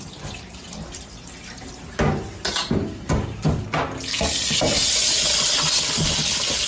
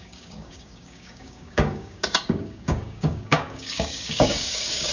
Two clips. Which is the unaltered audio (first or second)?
first